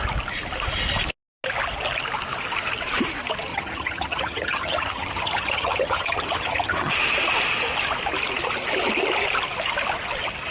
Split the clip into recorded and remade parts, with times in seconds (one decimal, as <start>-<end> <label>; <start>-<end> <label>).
0.0-3.5 recorded; 3.5-6.9 remade; 6.9-10.5 recorded